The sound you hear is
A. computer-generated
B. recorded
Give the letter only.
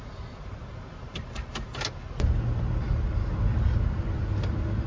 B